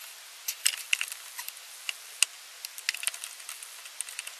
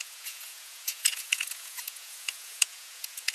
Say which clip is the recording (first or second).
first